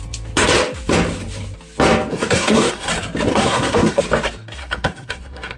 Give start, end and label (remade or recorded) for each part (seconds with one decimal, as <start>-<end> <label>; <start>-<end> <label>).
0.0-2.1 recorded; 2.1-2.9 remade; 2.9-3.3 recorded; 3.3-4.0 remade; 4.0-4.6 recorded; 4.6-5.6 remade